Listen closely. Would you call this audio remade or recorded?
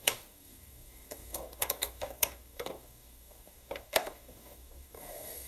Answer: remade